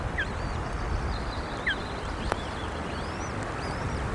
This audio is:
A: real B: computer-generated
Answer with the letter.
A